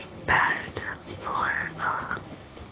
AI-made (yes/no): yes